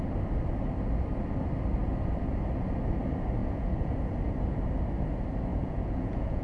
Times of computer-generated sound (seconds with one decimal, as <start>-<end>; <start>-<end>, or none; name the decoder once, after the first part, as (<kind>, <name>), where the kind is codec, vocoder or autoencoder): 3.4-3.9 (vocoder, Vocos); 5.5-6.4